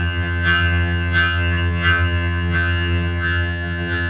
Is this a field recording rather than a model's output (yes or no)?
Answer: no